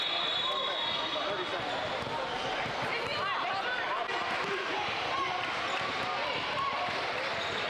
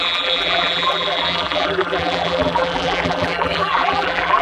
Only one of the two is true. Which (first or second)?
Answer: first